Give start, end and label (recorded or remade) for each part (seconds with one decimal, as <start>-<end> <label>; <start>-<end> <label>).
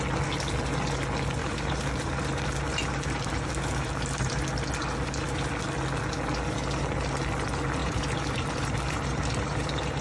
0.0-1.4 recorded; 1.4-4.4 remade; 4.4-7.8 recorded; 7.8-10.0 remade